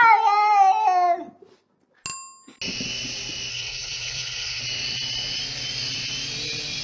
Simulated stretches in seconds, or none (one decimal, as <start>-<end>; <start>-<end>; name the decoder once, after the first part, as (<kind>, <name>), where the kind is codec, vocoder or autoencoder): 3.5-4.6 (codec, HILCodec)